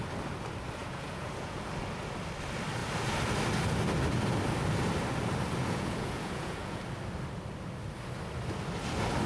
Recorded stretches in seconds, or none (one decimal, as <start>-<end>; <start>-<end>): 0.0-0.8; 1.6-5.6; 6.8-9.3